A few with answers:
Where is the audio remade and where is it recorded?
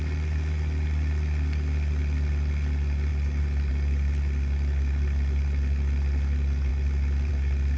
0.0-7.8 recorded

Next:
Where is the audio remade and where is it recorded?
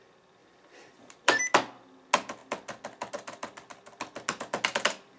0.0-0.4 recorded; 0.4-1.4 remade; 1.4-5.2 recorded